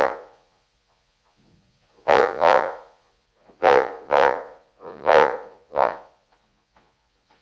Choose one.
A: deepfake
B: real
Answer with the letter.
A